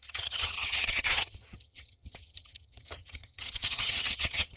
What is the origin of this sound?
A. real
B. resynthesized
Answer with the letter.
B